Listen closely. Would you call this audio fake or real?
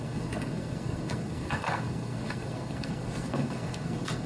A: fake